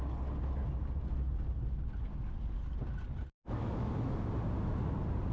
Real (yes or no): yes